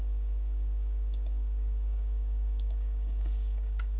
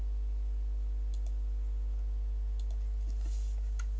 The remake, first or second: first